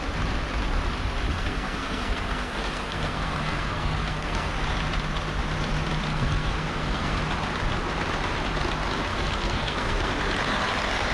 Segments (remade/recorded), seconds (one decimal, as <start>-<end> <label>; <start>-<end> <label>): 0.0-1.3 recorded; 1.3-4.5 remade; 4.5-6.1 recorded; 6.1-7.2 remade; 7.2-9.1 recorded; 9.1-10.1 remade; 10.1-11.1 recorded